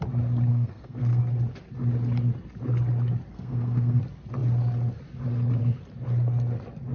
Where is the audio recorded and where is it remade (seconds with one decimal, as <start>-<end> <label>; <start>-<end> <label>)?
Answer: 0.0-0.5 recorded; 0.5-1.2 remade; 1.2-3.3 recorded; 3.3-4.0 remade; 4.0-6.9 recorded